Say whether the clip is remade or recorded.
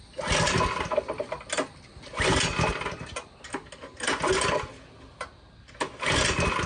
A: recorded